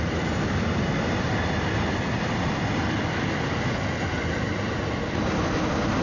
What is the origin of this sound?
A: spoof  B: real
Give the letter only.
B